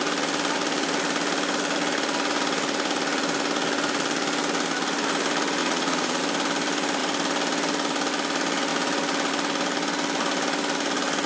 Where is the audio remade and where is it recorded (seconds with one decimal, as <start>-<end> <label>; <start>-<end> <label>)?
0.0-5.6 recorded; 5.6-6.2 remade; 6.2-11.3 recorded